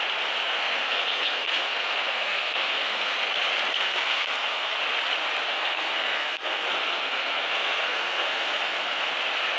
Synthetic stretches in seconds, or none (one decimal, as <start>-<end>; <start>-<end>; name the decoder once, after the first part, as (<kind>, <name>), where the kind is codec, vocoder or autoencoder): 0.4-3.3 (codec, SNAC); 3.7-4.8; 5.5-9.1